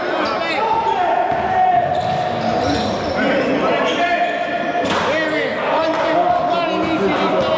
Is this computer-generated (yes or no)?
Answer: no